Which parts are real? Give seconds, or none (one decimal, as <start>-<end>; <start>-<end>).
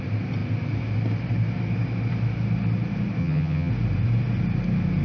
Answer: 0.0-3.2; 3.7-5.0